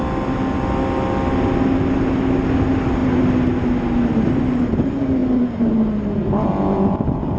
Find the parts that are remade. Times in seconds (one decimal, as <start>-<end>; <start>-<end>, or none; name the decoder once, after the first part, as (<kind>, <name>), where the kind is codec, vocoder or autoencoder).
none